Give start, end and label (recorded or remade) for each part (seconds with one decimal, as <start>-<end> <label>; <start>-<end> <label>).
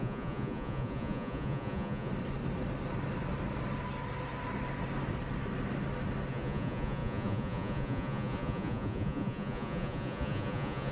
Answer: 0.0-2.1 remade; 2.1-6.3 recorded; 6.3-10.9 remade